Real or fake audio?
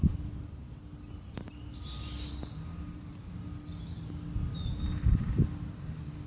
real